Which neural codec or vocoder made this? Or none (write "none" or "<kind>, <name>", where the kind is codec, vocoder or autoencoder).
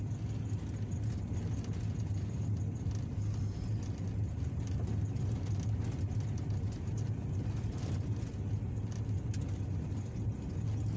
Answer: none